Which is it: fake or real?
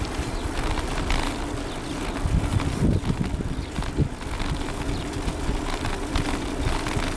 real